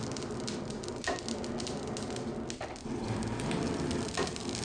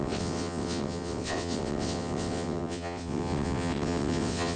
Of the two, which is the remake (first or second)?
second